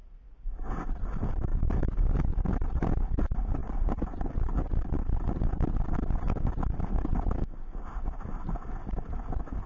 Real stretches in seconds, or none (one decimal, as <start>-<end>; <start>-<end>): 0.0-9.7